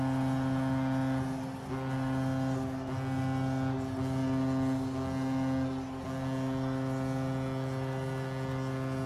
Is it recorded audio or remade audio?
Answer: recorded